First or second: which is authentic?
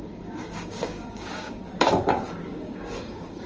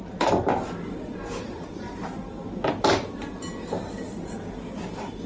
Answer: second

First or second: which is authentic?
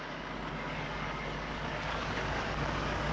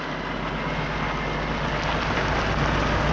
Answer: second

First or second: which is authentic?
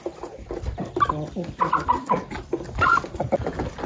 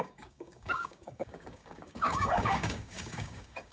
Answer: first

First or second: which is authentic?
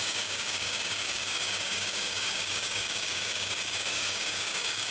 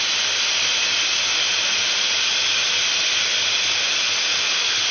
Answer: second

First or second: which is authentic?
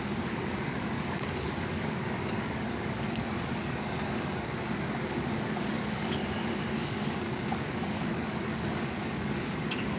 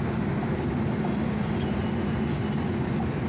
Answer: second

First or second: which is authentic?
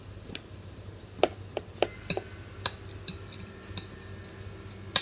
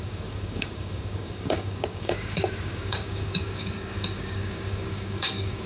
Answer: first